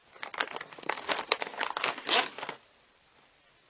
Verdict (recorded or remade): recorded